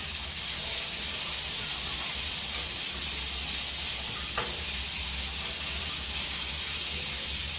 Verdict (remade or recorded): recorded